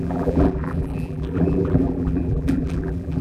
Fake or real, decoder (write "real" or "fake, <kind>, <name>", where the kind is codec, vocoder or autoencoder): fake, vocoder, BigVGAN v2